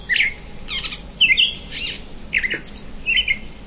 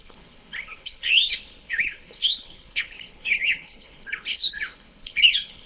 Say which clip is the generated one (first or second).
second